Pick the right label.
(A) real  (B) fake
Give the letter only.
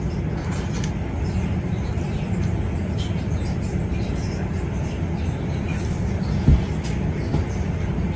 A